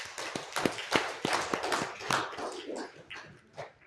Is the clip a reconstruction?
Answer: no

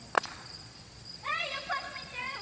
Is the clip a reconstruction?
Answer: yes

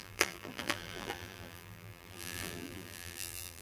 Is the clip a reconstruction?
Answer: yes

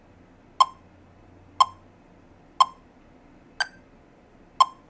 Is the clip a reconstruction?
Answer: no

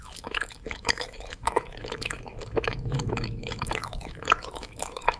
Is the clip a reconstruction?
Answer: yes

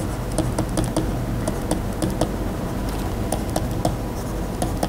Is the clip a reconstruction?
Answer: no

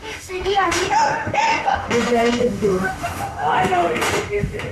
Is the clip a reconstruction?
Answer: yes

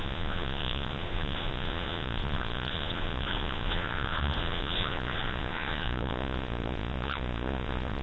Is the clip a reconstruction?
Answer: yes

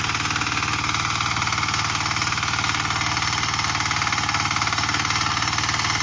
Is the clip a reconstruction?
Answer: no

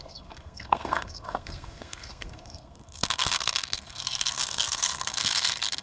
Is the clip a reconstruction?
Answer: yes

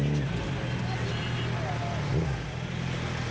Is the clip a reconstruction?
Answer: no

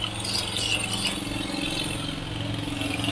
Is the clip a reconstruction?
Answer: no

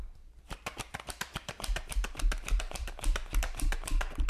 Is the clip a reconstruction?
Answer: yes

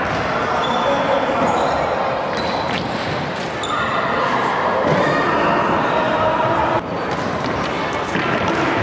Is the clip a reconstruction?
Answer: no